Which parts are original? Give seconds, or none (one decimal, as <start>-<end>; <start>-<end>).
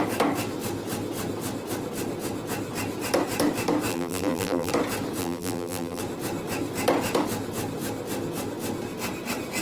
0.0-3.9; 4.7-5.2; 6.0-9.6